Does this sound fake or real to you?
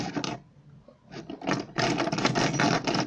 real